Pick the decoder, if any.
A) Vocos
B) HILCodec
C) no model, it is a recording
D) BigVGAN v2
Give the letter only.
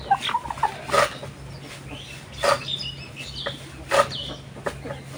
C